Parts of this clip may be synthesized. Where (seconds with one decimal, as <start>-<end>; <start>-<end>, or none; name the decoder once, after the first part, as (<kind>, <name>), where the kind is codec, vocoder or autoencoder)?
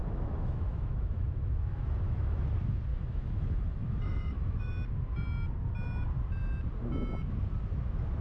0.0-2.5 (autoencoder, DAC-VAE); 2.9-4.7